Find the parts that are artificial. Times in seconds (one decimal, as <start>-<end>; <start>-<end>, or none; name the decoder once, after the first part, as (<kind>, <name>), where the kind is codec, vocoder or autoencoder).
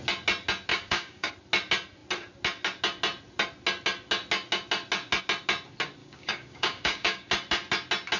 0.7-1.3 (codec, DAC); 6.0-7.3